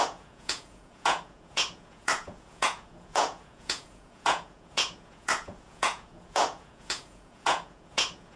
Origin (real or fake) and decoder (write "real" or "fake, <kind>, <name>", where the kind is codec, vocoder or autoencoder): fake, vocoder, Vocos